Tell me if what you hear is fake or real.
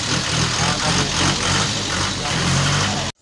real